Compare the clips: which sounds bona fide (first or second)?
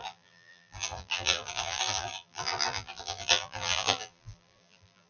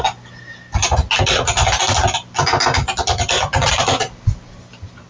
second